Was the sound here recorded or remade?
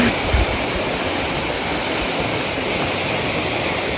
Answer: recorded